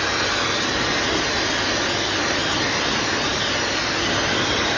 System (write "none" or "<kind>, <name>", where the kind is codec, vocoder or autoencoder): none